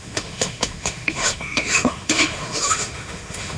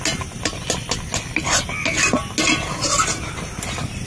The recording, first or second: second